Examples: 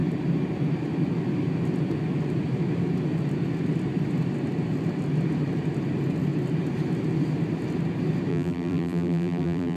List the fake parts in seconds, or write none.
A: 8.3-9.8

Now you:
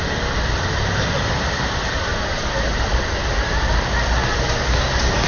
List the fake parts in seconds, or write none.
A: 2.1-3.9